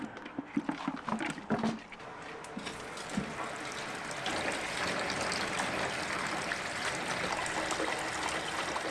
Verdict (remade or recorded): recorded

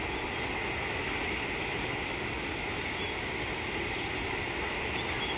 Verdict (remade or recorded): recorded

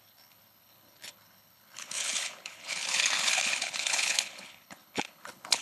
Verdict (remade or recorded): remade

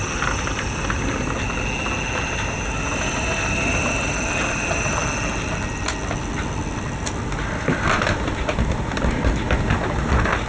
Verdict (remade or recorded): recorded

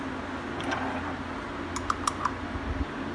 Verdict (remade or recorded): recorded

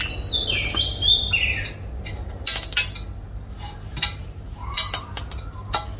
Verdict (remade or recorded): recorded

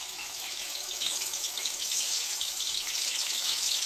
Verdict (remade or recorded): remade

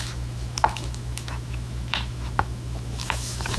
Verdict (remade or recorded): remade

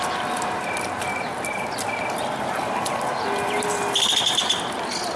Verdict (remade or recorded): recorded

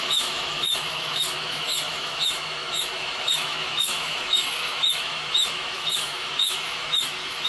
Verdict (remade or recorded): remade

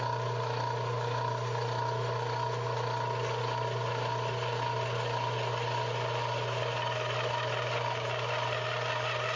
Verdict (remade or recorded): recorded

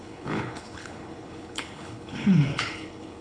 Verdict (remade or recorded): remade